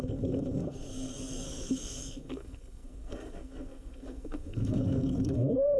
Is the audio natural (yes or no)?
no